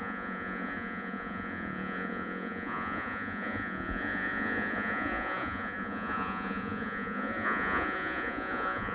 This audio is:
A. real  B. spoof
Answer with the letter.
B